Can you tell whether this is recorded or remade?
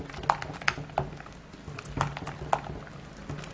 recorded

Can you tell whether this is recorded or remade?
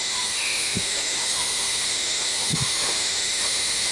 remade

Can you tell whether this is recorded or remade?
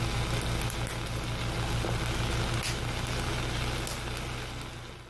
recorded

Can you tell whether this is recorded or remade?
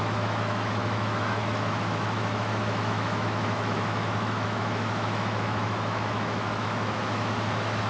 remade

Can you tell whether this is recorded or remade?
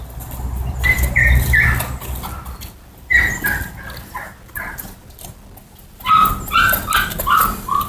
recorded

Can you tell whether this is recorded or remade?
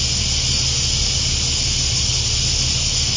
recorded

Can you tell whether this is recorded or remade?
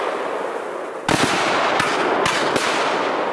recorded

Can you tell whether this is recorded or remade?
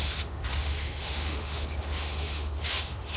remade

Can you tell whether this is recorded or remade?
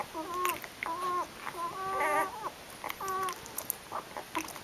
recorded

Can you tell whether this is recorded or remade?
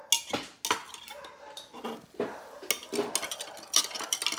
recorded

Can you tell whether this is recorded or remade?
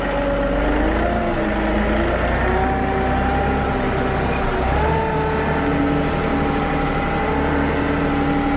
recorded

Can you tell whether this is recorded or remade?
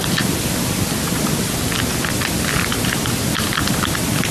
recorded